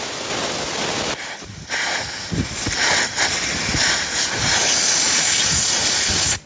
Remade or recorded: recorded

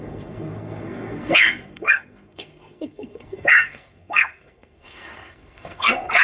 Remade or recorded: remade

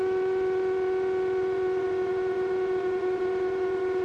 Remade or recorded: remade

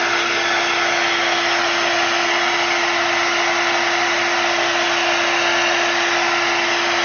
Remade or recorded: recorded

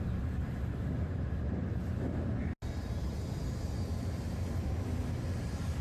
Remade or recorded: recorded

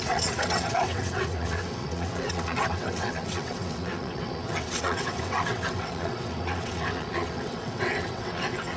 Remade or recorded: remade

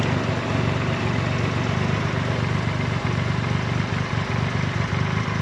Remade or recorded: recorded